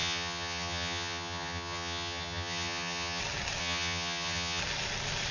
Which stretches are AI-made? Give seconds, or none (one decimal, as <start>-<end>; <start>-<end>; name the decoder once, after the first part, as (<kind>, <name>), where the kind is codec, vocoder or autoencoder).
0.0-3.2 (vocoder, HiFi-GAN); 3.6-4.6